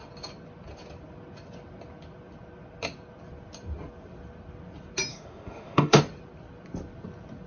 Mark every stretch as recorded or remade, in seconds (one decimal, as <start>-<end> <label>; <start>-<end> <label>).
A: 0.0-5.1 recorded; 5.1-6.0 remade; 6.0-7.5 recorded